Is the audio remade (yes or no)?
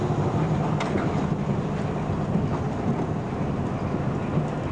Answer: no